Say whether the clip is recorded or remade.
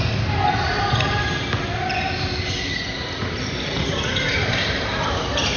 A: recorded